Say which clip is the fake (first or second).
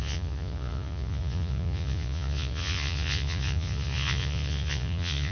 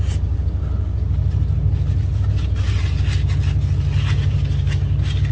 first